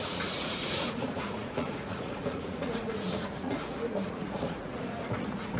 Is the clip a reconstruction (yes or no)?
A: yes